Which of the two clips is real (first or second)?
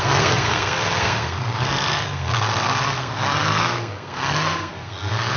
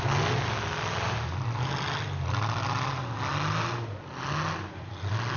second